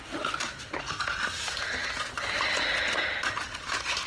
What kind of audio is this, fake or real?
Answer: real